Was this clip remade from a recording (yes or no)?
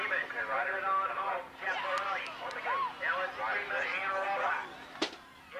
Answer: no